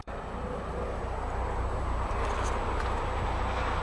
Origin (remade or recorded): recorded